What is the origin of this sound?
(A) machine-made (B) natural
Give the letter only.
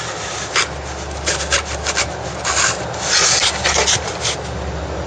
B